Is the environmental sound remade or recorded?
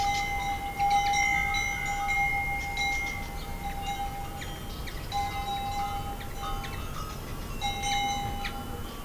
recorded